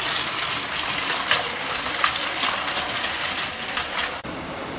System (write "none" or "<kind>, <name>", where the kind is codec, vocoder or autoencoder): none